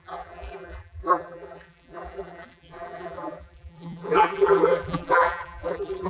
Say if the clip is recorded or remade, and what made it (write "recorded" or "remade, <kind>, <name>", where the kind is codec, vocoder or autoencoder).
remade, vocoder, BigVGAN v2